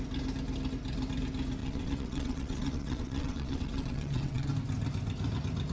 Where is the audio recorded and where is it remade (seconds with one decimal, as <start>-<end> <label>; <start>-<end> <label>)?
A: 0.0-1.6 recorded; 1.6-4.5 remade; 4.5-5.7 recorded

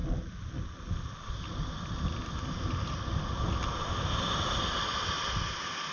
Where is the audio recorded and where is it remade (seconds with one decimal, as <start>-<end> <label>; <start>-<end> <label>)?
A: 0.0-5.9 recorded

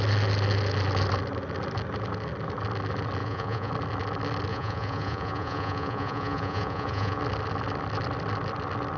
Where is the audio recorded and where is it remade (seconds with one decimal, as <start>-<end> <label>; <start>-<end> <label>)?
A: 0.0-3.2 recorded; 3.2-3.7 remade; 3.7-4.5 recorded; 4.5-7.2 remade; 7.2-9.0 recorded

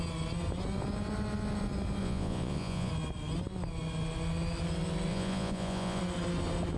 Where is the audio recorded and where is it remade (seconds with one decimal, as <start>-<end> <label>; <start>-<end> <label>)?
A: 0.0-2.0 recorded; 2.0-2.9 remade; 2.9-5.1 recorded; 5.1-6.0 remade; 6.0-6.8 recorded

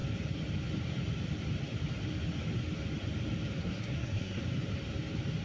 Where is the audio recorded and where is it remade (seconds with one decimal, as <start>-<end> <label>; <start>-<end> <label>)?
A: 0.0-3.6 recorded; 3.6-4.4 remade; 4.4-5.4 recorded

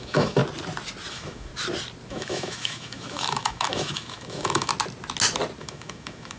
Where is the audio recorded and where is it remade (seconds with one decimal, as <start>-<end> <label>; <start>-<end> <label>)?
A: 0.0-0.4 remade; 0.4-1.1 recorded; 1.1-1.5 remade; 1.5-2.1 recorded; 2.1-4.7 remade; 4.7-5.6 recorded; 5.6-6.4 remade

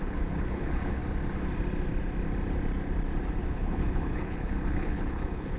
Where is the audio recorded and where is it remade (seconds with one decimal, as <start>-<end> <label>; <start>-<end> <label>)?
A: 0.0-1.0 remade; 1.0-3.4 recorded; 3.4-5.6 remade

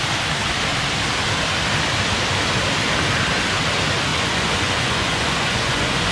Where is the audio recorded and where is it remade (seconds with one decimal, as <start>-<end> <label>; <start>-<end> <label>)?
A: 0.0-4.1 recorded; 4.1-6.1 remade